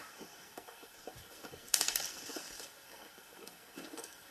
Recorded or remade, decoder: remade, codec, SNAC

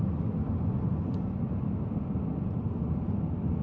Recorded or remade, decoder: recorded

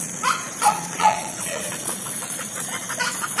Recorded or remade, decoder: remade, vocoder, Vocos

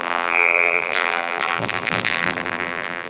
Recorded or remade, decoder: remade, vocoder, BigVGAN v2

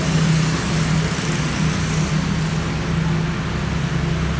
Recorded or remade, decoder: recorded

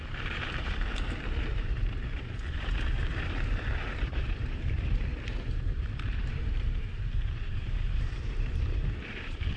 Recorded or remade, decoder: remade, vocoder, BigVGAN v2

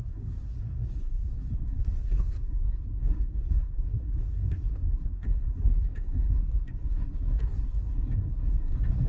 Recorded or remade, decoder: remade, codec, SNAC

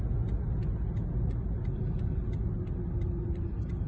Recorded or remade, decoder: recorded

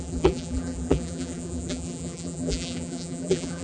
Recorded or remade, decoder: remade, vocoder, BigVGAN v2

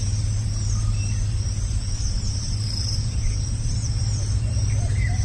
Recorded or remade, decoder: remade, vocoder, BigVGAN v2